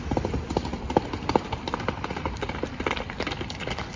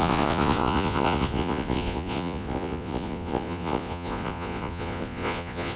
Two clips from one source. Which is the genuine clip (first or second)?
first